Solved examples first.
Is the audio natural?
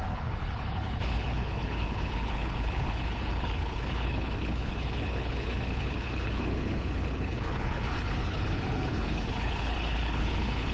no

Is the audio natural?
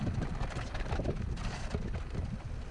yes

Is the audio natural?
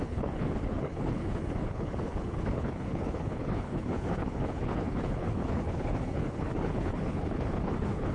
no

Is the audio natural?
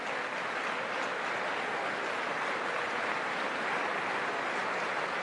yes